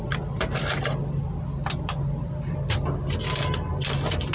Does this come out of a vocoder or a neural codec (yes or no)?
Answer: no